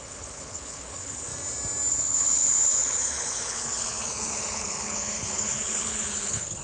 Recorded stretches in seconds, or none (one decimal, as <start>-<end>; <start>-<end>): 1.3-1.9